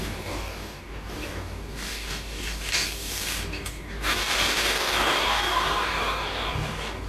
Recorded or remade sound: remade